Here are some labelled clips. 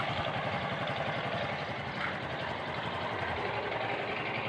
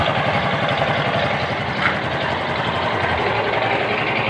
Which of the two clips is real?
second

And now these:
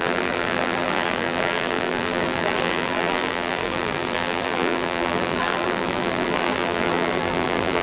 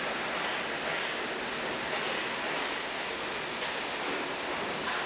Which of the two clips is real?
second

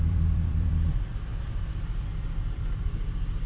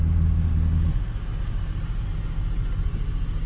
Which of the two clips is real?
second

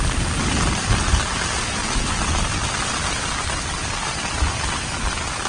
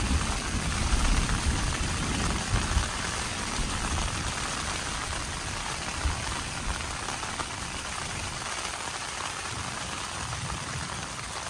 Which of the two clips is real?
first